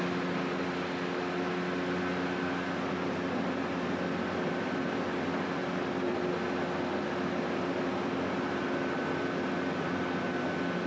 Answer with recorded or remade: recorded